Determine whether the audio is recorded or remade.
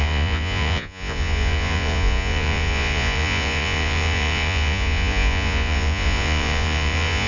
remade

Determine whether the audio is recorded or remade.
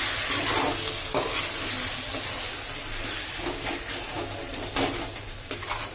recorded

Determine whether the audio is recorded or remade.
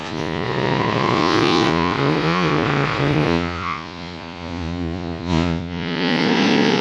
remade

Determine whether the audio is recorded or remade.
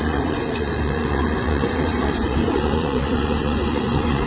remade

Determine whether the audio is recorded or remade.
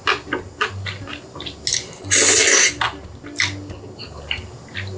recorded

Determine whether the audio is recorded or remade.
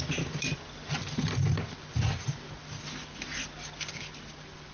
recorded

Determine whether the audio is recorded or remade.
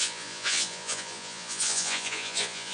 remade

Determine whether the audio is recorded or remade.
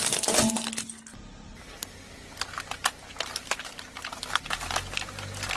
recorded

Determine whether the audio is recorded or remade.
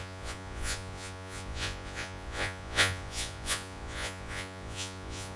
remade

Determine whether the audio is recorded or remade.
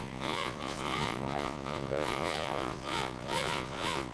remade